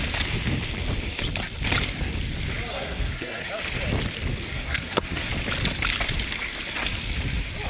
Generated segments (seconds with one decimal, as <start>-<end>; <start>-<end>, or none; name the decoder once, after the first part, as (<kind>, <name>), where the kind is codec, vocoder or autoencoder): 2.7-3.5 (codec, SNAC); 4.5-5.3